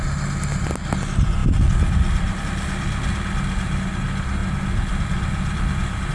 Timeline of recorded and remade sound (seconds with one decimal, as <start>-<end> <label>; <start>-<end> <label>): 0.0-6.1 recorded